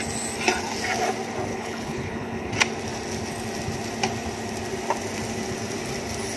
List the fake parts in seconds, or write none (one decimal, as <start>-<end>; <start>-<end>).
1.5-2.5